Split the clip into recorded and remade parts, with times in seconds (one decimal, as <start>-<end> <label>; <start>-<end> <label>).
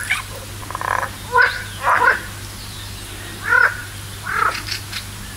0.0-5.4 recorded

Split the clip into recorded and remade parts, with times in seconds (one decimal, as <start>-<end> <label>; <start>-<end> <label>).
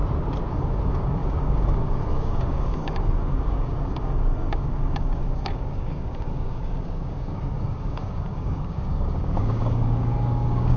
0.0-0.5 recorded; 0.5-10.8 remade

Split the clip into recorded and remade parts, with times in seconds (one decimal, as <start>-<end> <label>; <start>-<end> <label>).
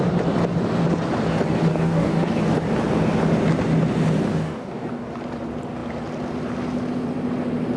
0.0-1.7 recorded; 1.7-2.3 remade; 2.3-4.3 recorded; 4.3-5.1 remade; 5.1-7.8 recorded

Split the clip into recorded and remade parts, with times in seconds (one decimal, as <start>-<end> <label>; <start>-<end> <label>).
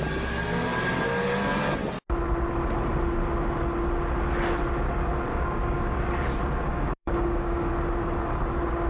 0.0-5.3 recorded; 5.3-5.9 remade; 5.9-6.7 recorded; 6.7-7.7 remade; 7.7-8.9 recorded